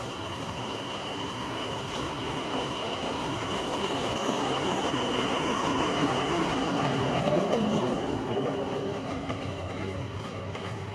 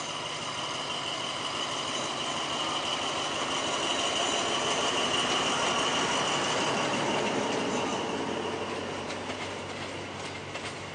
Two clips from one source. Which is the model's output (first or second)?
first